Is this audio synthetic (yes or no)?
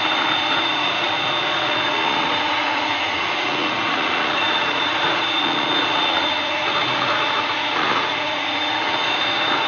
yes